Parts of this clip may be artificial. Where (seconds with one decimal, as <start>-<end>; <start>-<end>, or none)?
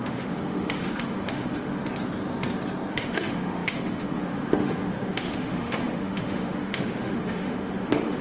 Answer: 0.0-1.8; 2.9-8.2